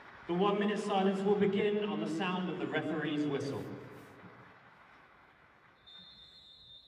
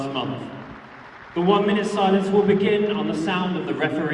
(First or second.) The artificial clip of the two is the first